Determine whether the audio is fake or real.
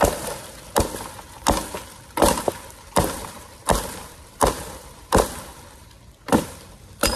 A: fake